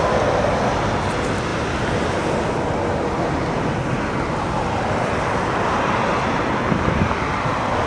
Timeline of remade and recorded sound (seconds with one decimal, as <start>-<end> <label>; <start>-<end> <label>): 0.0-7.9 recorded